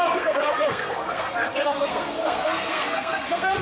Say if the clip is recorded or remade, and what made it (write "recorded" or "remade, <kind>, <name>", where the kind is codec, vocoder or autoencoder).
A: remade, codec, SNAC